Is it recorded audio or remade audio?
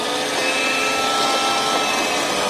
recorded